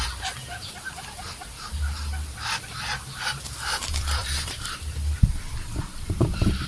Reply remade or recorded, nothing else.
remade